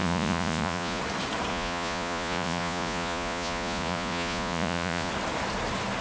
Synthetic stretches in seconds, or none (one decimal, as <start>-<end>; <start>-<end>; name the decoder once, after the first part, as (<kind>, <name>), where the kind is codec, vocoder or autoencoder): 0.0-1.0 (vocoder, Vocos); 1.5-5.1

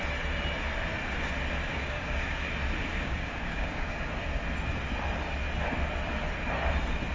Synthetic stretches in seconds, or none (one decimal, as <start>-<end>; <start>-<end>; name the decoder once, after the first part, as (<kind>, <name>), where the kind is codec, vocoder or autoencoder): 1.7-2.5 (codec, DAC); 2.9-4.1

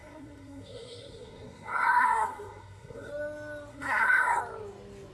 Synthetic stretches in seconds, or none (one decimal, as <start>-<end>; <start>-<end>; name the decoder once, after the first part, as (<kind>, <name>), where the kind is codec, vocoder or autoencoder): 0.0-3.1 (codec, SNAC); 3.7-4.4

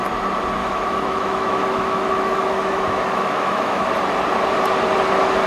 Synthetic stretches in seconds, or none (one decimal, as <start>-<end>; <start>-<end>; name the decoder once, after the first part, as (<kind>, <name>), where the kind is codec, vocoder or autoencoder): 0.6-3.9 (autoencoder, DAC-VAE)

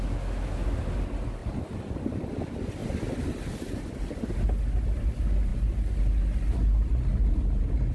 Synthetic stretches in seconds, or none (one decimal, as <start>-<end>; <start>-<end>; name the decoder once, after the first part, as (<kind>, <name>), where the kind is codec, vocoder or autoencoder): none

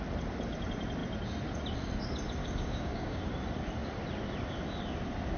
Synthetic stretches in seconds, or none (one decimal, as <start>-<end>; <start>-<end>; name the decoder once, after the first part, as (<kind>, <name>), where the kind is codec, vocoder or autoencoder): 2.4-3.2 (codec, DAC)

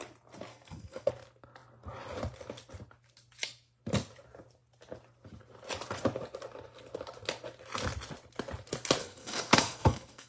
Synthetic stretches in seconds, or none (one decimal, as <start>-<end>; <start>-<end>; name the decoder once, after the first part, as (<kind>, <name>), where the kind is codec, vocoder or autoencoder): 0.5-1.1 (codec, SNAC); 9.0-10.3

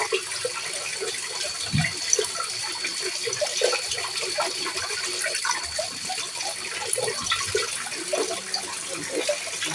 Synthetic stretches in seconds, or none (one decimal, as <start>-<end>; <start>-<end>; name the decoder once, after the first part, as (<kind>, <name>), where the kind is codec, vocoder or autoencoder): none